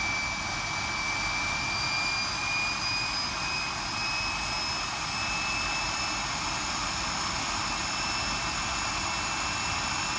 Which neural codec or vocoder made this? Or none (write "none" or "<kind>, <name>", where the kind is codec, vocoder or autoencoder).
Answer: none